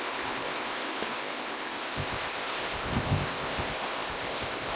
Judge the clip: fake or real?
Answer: fake